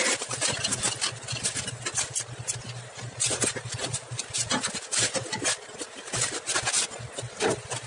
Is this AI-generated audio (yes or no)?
no